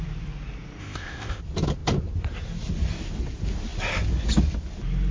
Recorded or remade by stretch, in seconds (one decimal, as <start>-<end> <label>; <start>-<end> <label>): 0.0-0.8 recorded; 0.8-1.4 remade; 1.4-5.1 recorded